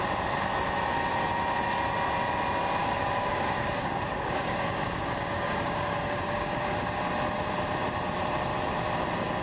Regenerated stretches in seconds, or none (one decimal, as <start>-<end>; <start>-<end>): 2.8-7.1